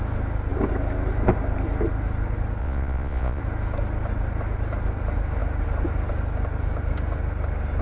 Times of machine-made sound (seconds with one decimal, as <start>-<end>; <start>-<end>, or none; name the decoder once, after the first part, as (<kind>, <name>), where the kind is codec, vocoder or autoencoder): 2.6-3.4 (vocoder, Vocos)